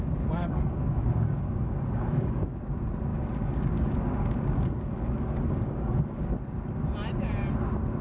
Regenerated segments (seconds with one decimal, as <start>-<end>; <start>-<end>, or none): 0.4-2.6; 3.1-6.3